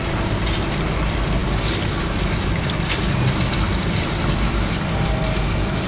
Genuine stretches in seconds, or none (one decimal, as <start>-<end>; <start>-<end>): 0.0-5.9